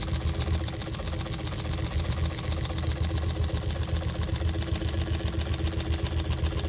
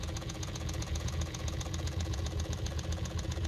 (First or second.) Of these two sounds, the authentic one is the first